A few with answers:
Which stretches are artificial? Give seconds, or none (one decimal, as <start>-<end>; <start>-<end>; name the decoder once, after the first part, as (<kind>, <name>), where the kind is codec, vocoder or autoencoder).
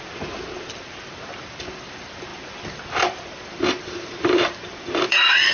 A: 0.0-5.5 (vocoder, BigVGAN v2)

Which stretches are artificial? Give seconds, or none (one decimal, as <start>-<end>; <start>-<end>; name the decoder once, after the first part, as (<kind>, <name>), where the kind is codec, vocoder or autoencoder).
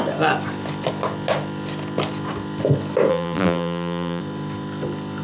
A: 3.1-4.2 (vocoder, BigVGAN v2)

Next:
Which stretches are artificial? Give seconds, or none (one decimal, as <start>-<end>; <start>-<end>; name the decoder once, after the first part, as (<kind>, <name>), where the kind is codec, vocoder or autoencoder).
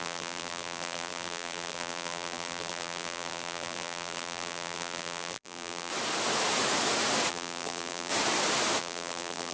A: 0.0-5.9 (vocoder, BigVGAN v2); 7.3-8.1; 8.8-9.5